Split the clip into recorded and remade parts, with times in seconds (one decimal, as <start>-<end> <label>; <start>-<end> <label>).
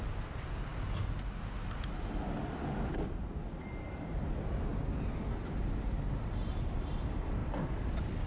0.0-0.7 remade; 0.7-2.4 recorded; 2.4-4.7 remade; 4.7-6.5 recorded; 6.5-7.4 remade; 7.4-8.3 recorded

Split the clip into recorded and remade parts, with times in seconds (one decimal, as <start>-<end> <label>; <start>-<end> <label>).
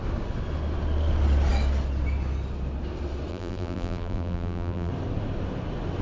0.0-3.3 recorded; 3.3-4.9 remade; 4.9-6.0 recorded